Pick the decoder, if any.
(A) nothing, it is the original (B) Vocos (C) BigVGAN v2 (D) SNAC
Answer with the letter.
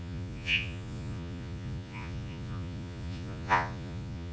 B